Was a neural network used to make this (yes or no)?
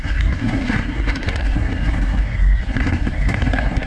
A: yes